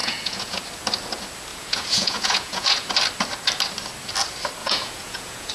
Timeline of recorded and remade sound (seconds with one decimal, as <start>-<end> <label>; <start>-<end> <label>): 0.0-0.6 remade; 0.6-1.5 recorded; 1.5-2.9 remade; 2.9-4.6 recorded; 4.6-5.5 remade